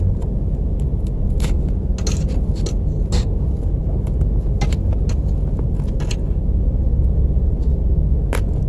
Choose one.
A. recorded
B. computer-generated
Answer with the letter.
A